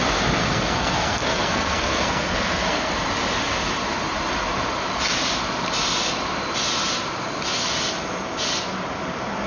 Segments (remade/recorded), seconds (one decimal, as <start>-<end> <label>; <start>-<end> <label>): 0.0-0.4 recorded; 0.4-2.9 remade; 2.9-9.5 recorded